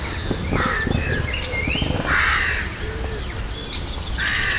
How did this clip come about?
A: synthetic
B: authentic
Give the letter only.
B